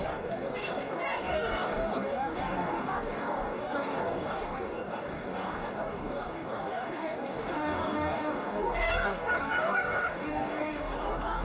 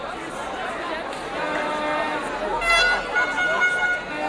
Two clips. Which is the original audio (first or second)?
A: second